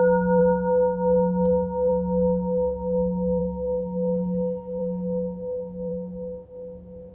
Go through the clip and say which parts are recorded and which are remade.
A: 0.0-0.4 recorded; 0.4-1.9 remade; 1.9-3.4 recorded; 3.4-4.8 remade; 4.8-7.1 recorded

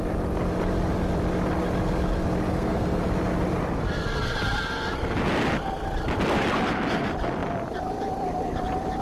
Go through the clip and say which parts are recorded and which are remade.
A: 0.0-2.5 recorded; 2.5-3.0 remade; 3.0-9.0 recorded

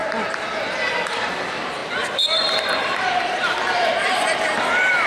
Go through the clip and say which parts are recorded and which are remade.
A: 0.0-1.3 remade; 1.3-1.8 recorded; 1.8-5.1 remade

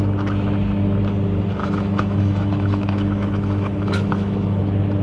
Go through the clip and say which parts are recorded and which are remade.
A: 0.0-1.6 recorded; 1.6-4.6 remade; 4.6-5.0 recorded

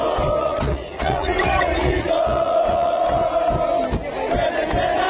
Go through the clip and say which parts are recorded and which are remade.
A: 0.0-0.4 recorded; 0.4-3.5 remade; 3.5-5.1 recorded